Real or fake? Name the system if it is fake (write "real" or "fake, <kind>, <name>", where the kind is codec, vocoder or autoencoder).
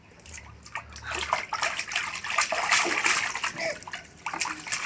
real